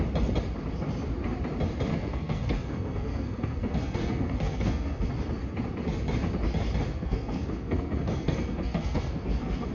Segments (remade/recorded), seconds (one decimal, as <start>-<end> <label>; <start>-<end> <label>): 0.0-1.9 recorded; 1.9-5.1 remade; 5.1-6.9 recorded; 6.9-9.7 remade